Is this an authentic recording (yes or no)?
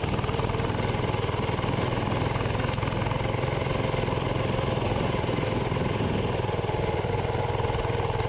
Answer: yes